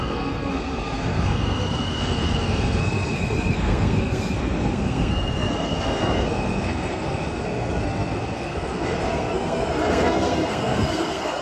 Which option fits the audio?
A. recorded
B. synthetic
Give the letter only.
B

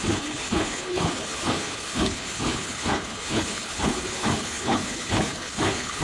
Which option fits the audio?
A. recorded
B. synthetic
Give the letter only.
B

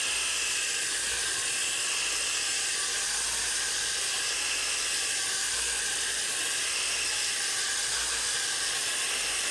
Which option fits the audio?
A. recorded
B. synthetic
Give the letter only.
A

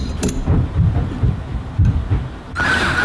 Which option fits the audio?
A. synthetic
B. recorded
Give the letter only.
B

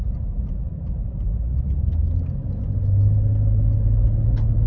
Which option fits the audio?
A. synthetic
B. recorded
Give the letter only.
B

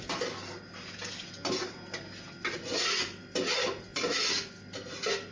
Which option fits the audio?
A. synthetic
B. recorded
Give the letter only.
B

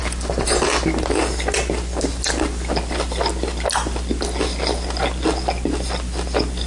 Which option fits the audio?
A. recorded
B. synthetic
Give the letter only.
A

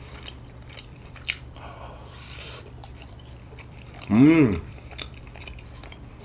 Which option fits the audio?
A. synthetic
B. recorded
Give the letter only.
A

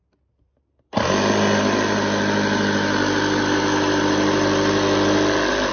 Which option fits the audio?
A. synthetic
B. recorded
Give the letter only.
B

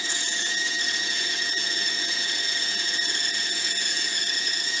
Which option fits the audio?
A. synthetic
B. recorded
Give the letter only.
A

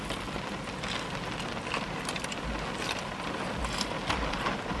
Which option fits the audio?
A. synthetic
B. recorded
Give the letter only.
B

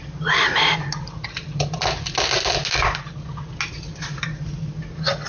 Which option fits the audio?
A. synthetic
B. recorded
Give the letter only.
B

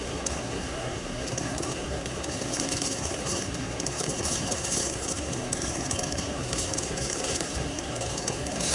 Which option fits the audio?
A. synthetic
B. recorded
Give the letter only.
A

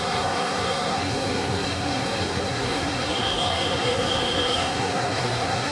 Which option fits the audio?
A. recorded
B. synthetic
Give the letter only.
B